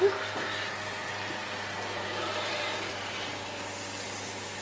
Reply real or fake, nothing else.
real